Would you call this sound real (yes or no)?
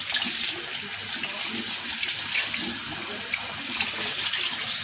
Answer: no